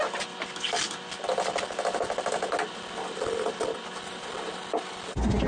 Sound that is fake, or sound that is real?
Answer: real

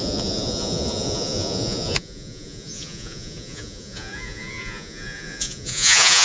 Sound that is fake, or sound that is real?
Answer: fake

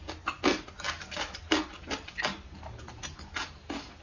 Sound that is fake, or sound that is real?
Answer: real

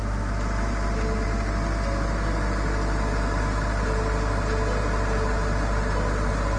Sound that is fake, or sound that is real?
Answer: real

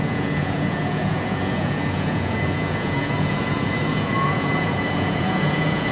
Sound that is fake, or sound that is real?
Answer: fake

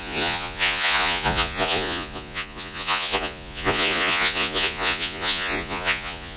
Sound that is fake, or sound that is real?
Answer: fake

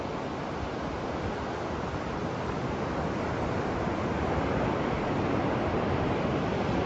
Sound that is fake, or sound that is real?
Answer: real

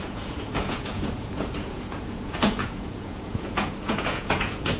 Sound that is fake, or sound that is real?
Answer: fake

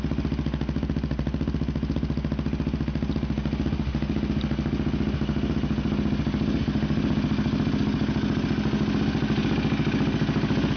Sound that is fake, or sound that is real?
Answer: real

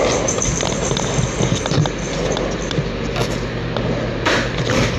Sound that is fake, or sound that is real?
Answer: real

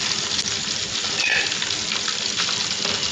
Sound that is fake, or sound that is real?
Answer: real